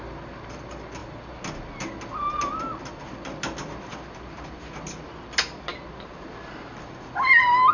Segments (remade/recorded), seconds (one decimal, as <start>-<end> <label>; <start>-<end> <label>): 0.0-7.7 recorded